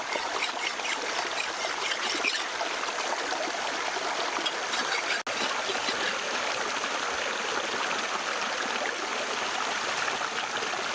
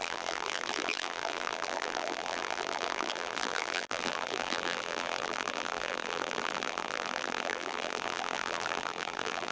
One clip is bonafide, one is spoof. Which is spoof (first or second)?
second